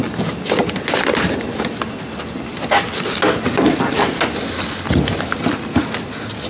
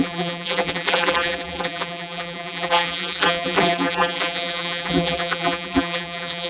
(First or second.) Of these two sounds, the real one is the first